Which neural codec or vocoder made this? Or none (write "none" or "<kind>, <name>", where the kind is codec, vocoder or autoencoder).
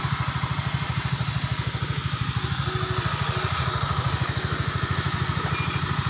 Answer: none